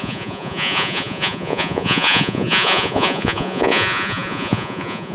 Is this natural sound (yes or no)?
no